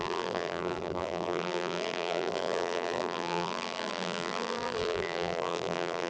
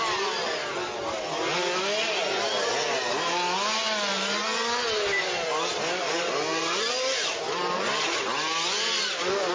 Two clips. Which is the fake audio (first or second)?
first